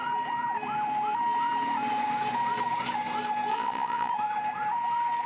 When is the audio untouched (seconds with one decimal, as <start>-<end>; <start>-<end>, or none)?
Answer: 0.0-3.5; 4.1-5.3